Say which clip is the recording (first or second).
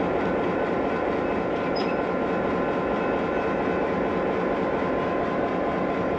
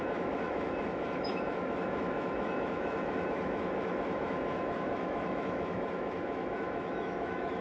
first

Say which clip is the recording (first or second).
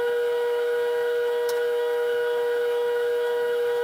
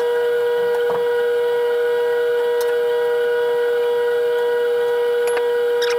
second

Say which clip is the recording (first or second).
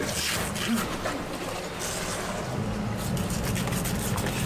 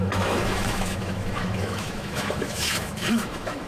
first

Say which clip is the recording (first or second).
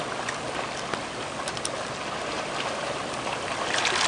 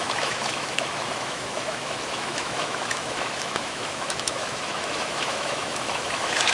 first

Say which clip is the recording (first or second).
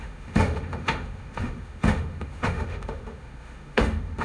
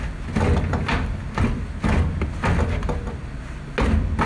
second